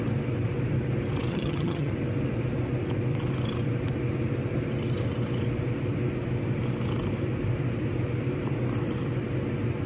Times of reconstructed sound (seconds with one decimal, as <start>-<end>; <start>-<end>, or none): 1.3-1.9